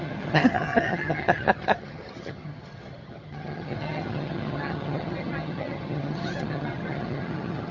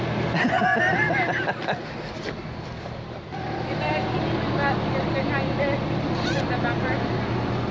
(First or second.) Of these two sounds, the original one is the second